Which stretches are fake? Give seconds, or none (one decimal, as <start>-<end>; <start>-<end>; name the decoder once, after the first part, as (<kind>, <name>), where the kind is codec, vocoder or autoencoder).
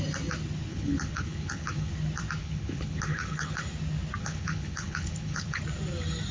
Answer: 0.7-1.9 (codec, HILCodec); 2.4-3.6; 4.2-5.6